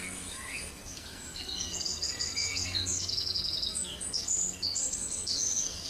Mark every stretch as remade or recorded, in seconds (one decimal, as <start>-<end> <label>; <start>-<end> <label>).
0.0-5.9 remade